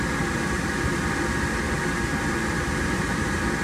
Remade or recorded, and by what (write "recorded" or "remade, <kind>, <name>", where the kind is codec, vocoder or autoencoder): recorded